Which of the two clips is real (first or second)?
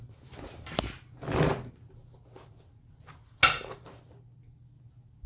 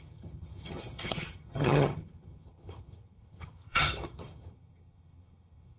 first